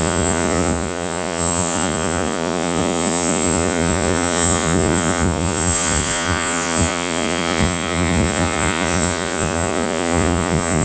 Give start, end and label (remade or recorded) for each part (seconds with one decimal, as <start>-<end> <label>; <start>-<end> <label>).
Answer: 0.0-10.8 remade